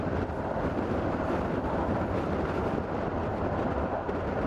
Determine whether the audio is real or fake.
real